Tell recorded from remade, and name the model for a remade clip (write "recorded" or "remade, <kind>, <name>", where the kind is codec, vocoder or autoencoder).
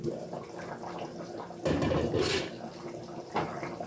recorded